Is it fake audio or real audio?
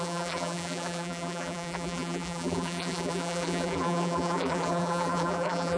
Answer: fake